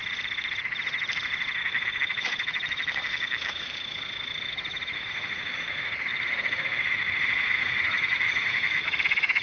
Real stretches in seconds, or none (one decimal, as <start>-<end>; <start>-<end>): 0.0-1.6